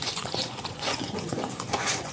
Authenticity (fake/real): fake